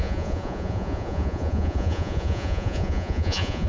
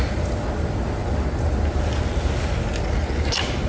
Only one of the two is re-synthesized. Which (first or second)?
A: first